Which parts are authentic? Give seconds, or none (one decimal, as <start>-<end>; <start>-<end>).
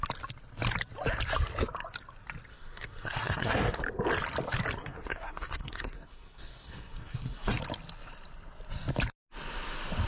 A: 0.0-2.5; 3.7-4.8; 7.6-10.1